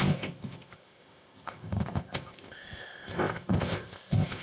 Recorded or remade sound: remade